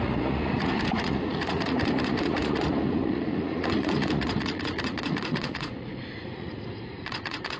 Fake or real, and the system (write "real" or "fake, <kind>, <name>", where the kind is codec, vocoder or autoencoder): fake, vocoder, Vocos